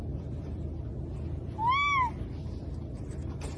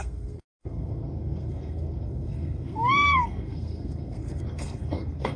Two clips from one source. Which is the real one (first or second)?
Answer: first